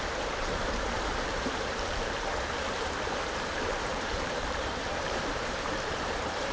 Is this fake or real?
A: fake